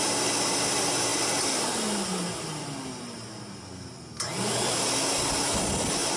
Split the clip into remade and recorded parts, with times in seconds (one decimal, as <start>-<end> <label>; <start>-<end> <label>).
0.0-6.2 recorded